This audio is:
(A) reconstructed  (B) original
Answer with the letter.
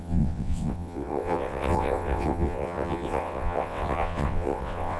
A